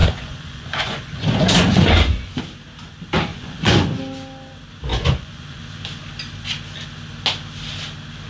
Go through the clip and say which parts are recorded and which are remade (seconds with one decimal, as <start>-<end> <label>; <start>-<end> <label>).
0.0-2.4 remade; 2.4-3.3 recorded; 3.3-4.0 remade; 4.0-4.9 recorded; 4.9-5.6 remade; 5.6-8.3 recorded